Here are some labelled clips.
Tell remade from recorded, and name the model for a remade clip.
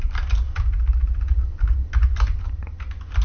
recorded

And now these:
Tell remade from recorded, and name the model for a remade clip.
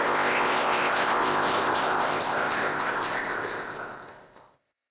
remade, codec, ZipCodec